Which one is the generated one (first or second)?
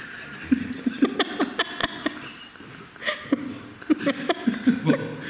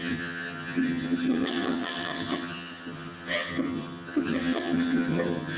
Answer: second